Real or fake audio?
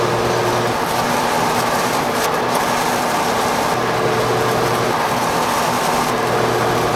real